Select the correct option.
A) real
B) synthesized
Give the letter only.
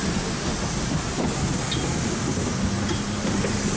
A